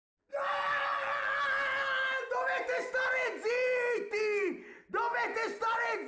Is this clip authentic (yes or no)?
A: yes